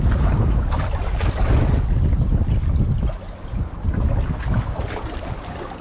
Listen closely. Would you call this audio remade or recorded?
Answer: recorded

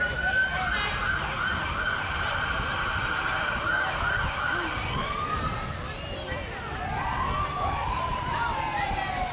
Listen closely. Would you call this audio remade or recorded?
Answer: recorded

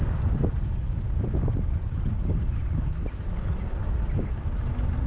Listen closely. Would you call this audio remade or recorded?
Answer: recorded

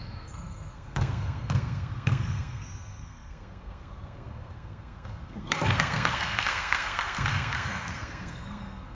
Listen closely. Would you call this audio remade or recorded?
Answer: remade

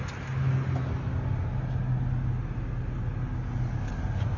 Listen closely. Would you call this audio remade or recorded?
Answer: recorded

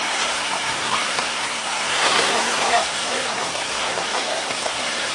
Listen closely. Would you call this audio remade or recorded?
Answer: remade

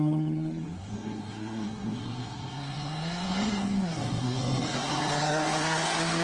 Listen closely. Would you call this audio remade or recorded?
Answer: remade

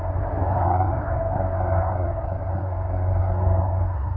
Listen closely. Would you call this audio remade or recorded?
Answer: remade